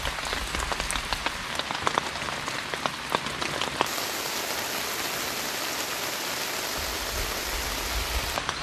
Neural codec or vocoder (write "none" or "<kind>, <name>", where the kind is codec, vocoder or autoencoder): none